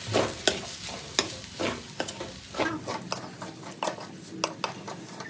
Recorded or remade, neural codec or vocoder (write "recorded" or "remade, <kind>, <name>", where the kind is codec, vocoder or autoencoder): recorded